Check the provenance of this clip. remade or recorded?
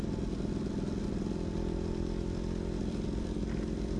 recorded